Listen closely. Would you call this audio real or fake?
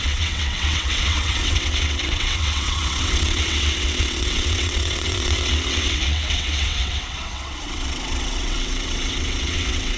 fake